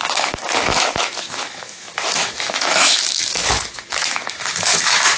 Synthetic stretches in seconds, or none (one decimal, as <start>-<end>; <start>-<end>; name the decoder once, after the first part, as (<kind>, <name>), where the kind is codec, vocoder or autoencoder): 0.0-5.2 (autoencoder, DAC-VAE)